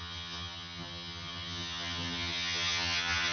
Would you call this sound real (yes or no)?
no